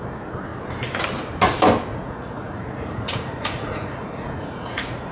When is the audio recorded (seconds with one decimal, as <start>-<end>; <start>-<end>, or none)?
0.0-1.9